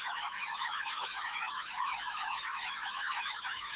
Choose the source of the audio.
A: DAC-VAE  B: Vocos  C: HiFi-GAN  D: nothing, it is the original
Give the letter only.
A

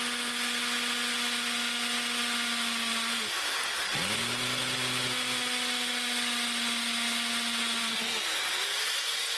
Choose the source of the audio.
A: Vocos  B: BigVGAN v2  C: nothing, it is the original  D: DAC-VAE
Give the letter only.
C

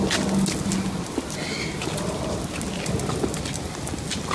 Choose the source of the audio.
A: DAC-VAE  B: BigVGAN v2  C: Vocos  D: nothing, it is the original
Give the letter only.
D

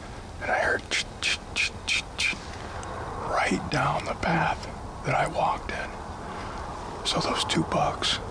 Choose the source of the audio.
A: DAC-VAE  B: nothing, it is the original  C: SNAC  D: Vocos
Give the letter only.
B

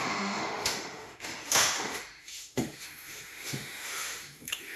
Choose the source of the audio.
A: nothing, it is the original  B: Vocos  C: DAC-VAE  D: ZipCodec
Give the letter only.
C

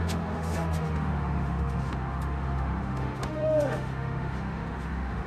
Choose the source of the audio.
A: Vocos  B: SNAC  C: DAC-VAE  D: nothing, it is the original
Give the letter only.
C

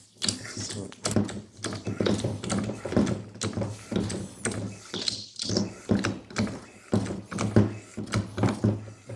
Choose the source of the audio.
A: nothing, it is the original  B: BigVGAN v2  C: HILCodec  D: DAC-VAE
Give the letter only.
A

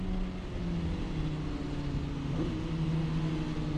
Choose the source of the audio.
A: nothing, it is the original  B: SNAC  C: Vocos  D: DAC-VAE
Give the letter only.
A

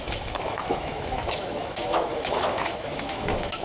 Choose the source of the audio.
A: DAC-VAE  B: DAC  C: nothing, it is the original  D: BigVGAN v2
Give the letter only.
A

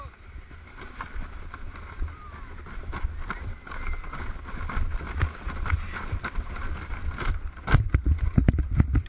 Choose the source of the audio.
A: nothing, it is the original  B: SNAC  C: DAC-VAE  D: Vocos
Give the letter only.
A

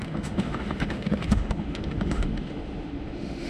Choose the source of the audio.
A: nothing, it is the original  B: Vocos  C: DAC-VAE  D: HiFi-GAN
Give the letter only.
C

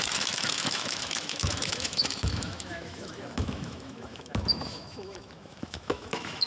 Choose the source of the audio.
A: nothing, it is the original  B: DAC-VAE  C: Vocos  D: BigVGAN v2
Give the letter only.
B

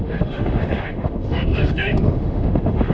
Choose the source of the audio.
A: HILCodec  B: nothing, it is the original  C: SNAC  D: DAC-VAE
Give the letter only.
D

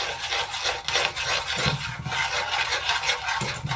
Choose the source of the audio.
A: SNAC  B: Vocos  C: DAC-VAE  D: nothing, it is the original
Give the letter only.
D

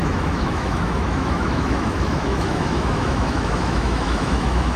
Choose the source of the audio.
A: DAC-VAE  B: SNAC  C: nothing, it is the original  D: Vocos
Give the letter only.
A